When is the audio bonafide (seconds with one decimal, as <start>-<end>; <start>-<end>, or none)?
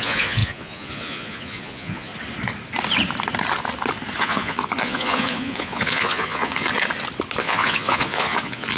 2.1-4.2; 6.7-7.4